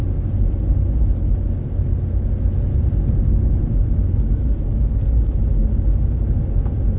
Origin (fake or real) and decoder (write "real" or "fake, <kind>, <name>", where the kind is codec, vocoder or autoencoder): real